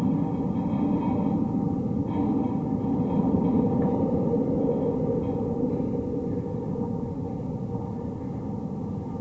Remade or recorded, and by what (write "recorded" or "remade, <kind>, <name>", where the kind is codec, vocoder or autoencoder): recorded